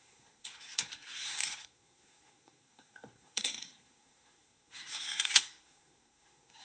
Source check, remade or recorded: remade